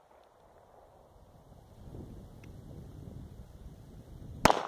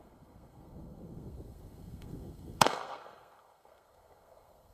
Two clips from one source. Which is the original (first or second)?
first